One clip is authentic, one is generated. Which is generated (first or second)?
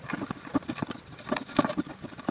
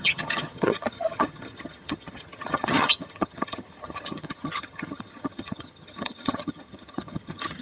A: second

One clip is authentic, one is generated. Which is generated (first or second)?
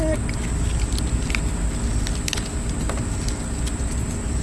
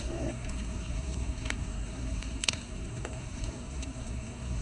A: second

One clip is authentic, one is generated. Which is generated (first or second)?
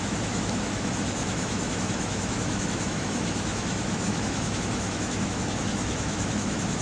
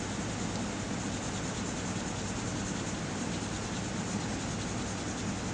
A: first